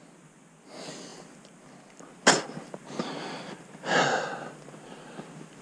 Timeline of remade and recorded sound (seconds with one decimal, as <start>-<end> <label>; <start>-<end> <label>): 0.0-5.6 recorded